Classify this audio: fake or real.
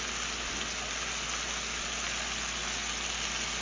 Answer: real